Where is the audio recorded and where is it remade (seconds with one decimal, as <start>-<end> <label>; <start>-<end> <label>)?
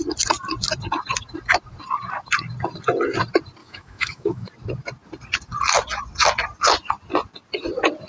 0.0-3.6 recorded; 3.6-4.5 remade; 4.5-8.1 recorded